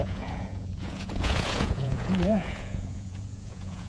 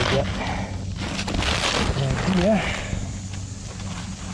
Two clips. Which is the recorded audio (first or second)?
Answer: second